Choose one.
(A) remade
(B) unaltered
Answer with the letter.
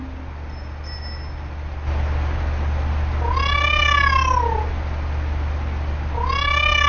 B